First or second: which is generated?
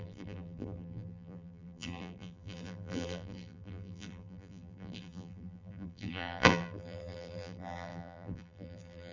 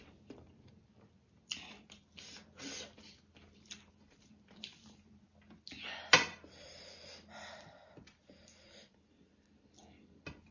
first